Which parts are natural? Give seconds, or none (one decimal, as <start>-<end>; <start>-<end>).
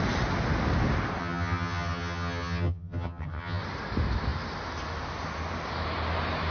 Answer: 0.0-1.2; 3.6-6.5